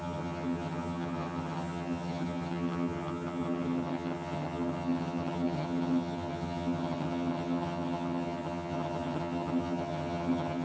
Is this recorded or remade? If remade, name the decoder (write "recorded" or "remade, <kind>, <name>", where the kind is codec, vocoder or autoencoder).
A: remade, vocoder, HiFi-GAN